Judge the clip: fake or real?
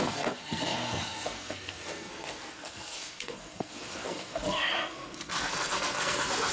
fake